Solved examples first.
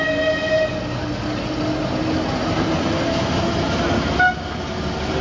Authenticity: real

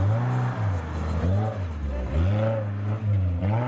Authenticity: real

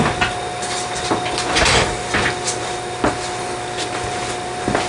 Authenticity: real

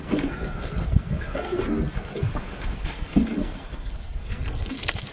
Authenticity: fake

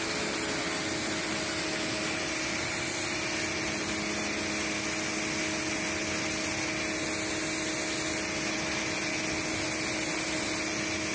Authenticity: real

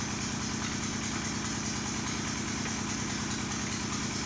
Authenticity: real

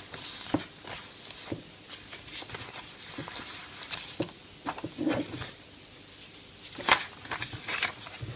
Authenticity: real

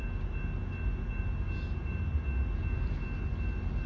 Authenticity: real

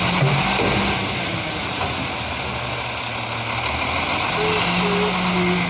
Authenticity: real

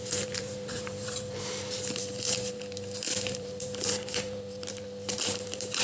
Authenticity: fake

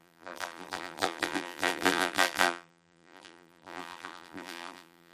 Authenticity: fake